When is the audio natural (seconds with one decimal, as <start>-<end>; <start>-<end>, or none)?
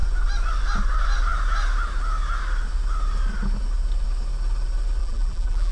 0.0-5.0